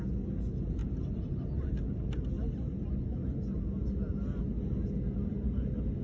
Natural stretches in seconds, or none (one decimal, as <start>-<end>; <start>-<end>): 0.0-6.0